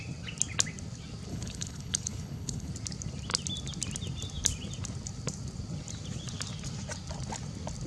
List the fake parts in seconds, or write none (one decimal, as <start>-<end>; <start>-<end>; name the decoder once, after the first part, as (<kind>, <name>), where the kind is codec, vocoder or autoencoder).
1.3-2.7 (codec, HILCodec)